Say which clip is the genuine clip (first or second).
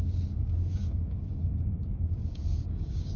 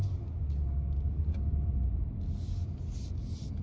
second